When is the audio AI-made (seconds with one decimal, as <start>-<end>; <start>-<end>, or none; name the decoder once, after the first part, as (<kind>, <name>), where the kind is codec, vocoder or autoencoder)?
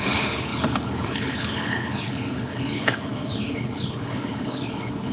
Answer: 0.0-5.1 (codec, HILCodec)